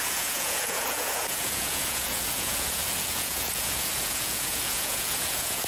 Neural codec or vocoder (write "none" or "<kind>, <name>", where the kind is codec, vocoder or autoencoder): vocoder, Vocos